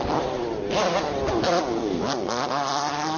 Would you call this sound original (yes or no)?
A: yes